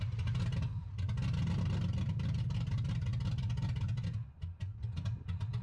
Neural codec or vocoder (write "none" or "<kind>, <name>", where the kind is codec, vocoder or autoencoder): none